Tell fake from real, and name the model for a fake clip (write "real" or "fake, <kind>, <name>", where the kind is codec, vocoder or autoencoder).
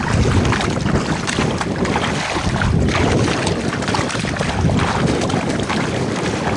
real